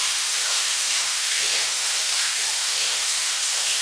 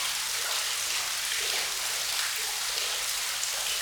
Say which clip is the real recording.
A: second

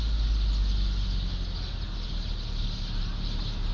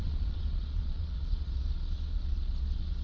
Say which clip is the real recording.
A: first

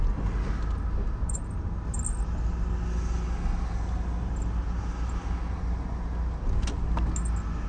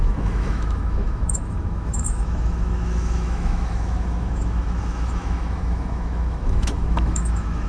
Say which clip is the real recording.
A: first